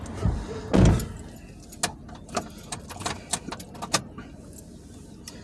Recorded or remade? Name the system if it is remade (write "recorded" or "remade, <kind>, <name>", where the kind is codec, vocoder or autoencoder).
recorded